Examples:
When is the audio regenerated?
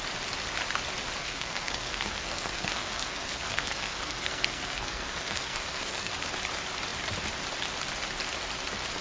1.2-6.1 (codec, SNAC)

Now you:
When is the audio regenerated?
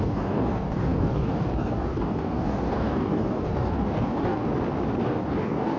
0.0-4.5 (codec, DAC); 5.0-5.8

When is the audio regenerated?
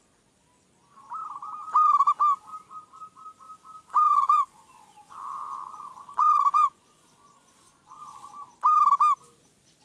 4.1-8.5 (vocoder, Vocos)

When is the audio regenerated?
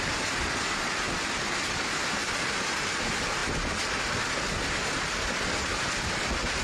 none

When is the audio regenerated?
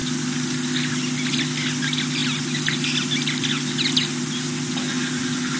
none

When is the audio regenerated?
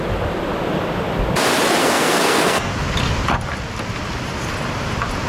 1.8-2.7 (codec, SNAC)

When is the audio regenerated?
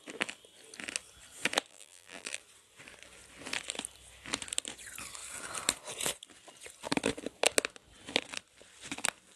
1.7-2.4 (vocoder, BigVGAN v2)